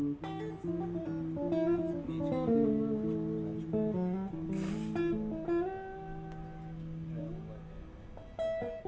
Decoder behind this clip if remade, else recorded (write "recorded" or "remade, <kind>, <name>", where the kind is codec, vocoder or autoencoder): recorded